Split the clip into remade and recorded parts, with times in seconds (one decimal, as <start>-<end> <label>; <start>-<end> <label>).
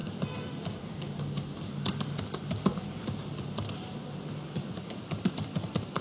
0.0-6.0 recorded